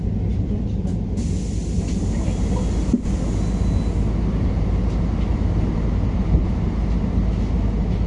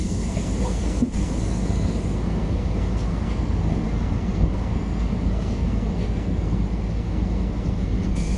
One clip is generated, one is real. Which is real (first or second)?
first